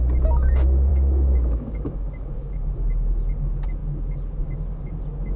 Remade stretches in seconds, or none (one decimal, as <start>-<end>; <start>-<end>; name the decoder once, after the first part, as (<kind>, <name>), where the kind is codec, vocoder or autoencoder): 0.9-2.6 (autoencoder, DAC-VAE)